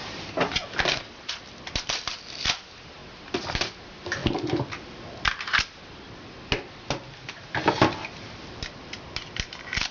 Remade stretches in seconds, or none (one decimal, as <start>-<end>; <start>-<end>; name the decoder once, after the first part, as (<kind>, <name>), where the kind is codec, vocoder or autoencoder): none